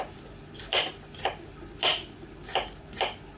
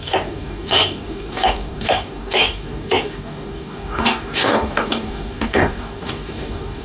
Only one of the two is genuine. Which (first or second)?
first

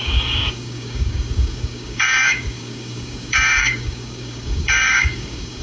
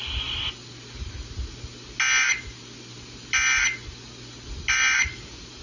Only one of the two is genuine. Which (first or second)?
second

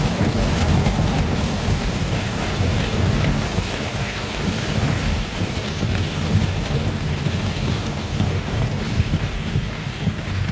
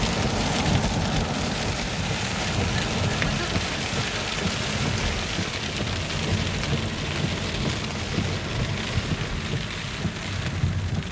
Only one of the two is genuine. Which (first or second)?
second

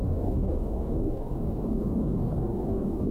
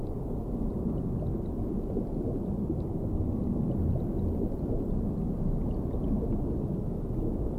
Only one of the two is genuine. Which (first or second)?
second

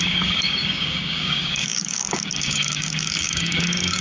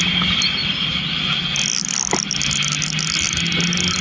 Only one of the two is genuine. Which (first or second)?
second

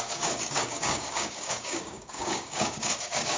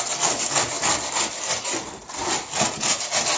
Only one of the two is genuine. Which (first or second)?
second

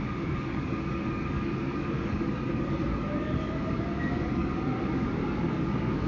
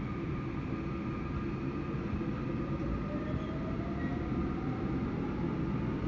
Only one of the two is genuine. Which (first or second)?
second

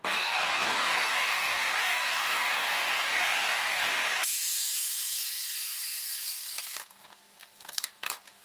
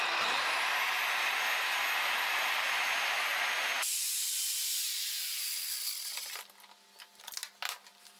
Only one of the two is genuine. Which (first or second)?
second